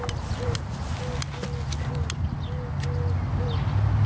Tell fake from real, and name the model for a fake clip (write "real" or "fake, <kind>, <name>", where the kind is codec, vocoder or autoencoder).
real